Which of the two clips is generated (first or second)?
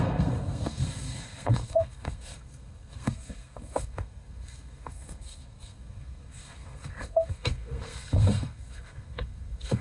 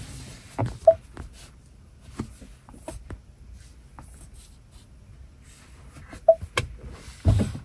first